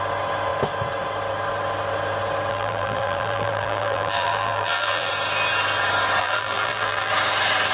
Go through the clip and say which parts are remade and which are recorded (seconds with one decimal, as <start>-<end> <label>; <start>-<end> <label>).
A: 0.0-2.5 recorded; 2.5-5.1 remade; 5.1-6.2 recorded; 6.2-7.1 remade; 7.1-7.7 recorded